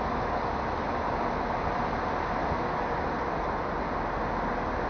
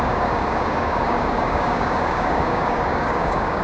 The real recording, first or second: first